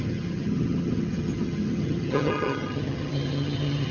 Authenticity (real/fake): fake